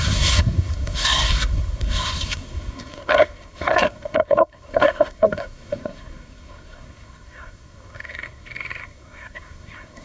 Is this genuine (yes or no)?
no